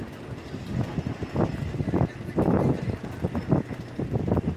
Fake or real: real